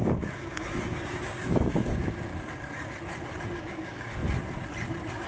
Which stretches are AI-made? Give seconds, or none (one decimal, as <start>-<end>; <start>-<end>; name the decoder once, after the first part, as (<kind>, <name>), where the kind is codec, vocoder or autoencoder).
0.0-2.3 (codec, DAC); 3.5-4.2